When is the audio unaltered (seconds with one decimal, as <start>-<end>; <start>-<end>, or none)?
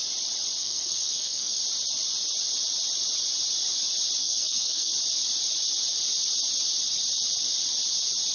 0.0-0.6; 1.6-4.2; 4.9-8.3